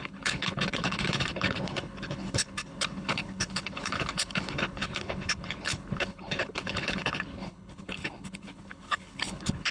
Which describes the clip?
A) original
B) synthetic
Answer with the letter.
B